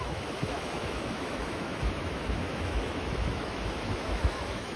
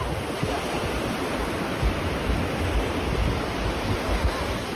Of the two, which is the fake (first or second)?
first